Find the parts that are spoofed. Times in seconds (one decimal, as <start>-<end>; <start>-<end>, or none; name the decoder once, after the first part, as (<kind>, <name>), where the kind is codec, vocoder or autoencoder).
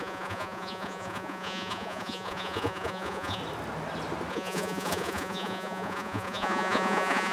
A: 0.0-3.4 (vocoder, Vocos); 4.3-7.3